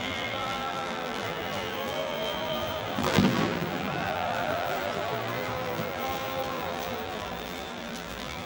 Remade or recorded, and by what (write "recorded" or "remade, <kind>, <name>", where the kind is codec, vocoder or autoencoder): remade, vocoder, BigVGAN v2